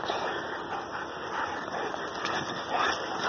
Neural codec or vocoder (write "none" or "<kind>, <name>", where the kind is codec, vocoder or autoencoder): none